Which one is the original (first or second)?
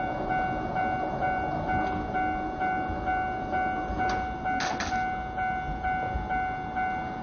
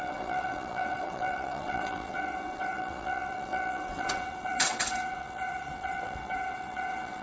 first